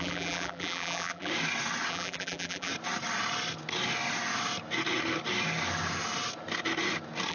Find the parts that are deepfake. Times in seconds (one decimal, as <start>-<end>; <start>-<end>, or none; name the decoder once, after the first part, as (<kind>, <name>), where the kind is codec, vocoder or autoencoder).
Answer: 0.0-1.3 (vocoder, BigVGAN v2); 1.9-2.7